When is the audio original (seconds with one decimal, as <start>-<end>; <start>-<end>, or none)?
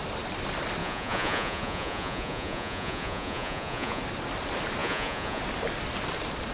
0.0-0.8; 4.0-4.8; 5.4-6.5